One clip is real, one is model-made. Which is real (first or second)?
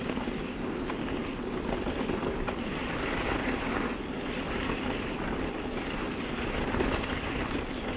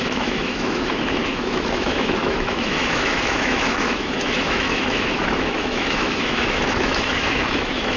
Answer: first